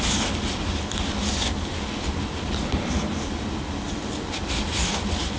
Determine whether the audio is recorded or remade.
recorded